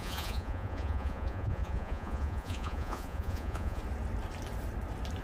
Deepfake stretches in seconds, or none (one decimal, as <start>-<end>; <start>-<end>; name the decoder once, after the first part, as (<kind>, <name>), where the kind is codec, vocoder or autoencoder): 0.0-3.8 (vocoder, Vocos)